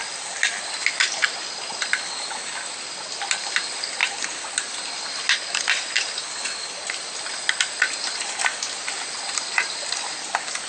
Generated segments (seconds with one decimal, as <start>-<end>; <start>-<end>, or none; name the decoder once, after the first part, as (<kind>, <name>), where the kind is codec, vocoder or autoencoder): none